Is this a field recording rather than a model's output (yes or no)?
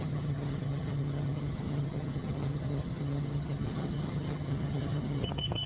no